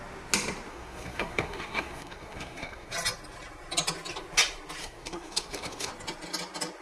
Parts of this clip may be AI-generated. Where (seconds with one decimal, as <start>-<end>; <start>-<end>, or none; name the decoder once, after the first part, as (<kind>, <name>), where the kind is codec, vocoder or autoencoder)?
0.7-2.9 (codec, SNAC); 4.8-5.9